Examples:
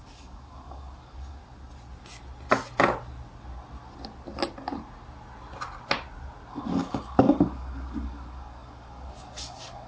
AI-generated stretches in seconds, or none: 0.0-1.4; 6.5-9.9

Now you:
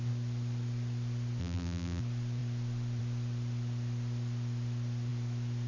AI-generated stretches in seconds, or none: 1.4-2.0

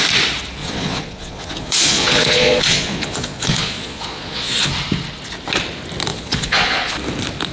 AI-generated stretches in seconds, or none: 0.6-4.7; 6.1-6.9

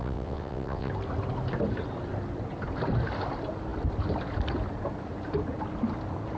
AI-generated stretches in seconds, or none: 0.0-0.9

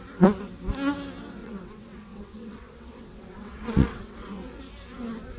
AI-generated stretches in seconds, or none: 1.4-4.6